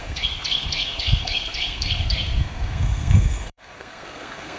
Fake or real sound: fake